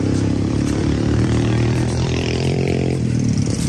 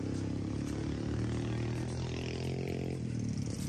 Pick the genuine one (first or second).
second